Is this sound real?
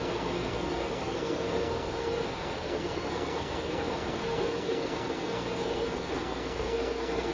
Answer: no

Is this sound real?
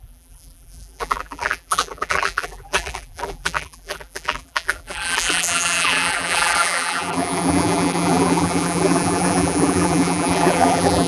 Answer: no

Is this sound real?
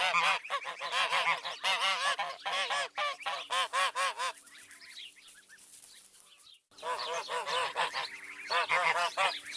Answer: yes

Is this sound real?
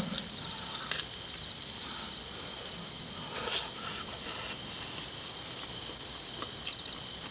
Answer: yes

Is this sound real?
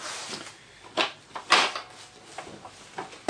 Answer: yes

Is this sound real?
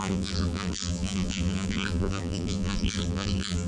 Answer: no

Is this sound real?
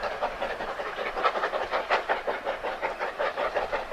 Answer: yes